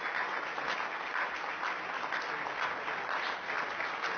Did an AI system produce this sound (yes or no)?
no